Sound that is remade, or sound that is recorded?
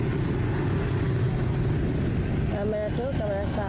recorded